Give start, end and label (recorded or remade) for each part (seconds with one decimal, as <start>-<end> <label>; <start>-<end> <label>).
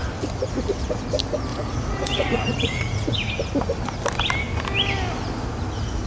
0.0-1.5 recorded; 1.5-3.3 remade; 3.3-6.1 recorded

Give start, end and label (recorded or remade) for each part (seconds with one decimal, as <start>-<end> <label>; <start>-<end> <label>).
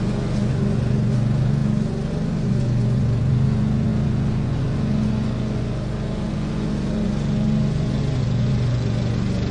0.0-9.5 remade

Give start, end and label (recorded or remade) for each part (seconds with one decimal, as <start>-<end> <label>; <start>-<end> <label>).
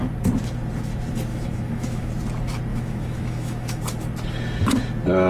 0.0-1.3 recorded; 1.3-2.1 remade; 2.1-2.7 recorded; 2.7-3.8 remade; 3.8-5.3 recorded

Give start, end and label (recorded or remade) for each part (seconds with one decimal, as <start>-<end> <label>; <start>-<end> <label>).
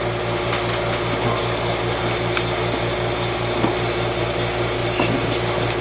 0.0-5.8 recorded